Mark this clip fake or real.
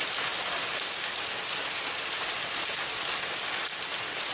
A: real